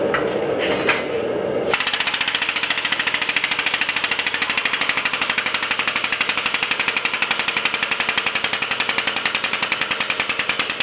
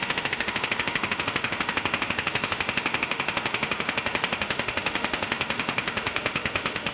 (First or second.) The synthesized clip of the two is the second